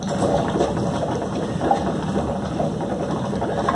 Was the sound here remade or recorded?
recorded